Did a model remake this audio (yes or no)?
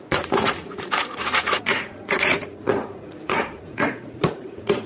yes